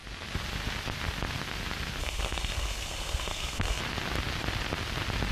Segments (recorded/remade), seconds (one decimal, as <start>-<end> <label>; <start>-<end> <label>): 0.0-2.0 recorded; 2.0-3.8 remade; 3.8-5.3 recorded